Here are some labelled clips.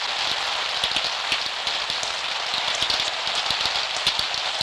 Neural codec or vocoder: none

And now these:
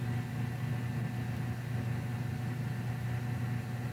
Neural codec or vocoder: none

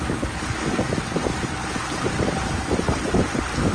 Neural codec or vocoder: vocoder, BigVGAN v2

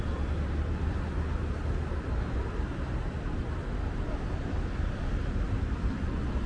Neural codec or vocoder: none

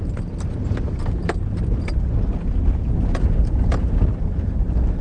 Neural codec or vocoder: none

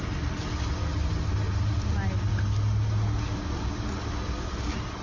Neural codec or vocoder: none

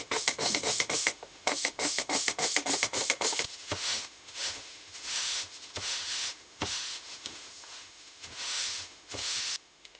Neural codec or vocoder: autoencoder, DAC-VAE